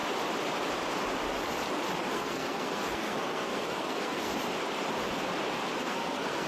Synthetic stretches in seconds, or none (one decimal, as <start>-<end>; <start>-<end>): 2.1-4.3; 5.8-6.5